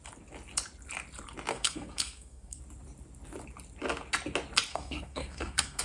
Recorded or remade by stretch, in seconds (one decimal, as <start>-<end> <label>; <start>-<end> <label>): 0.0-1.5 recorded; 1.5-2.6 remade; 2.6-4.7 recorded; 4.7-5.8 remade